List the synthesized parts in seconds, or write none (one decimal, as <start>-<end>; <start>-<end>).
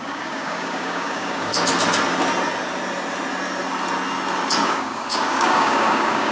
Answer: 0.0-1.5; 4.7-6.3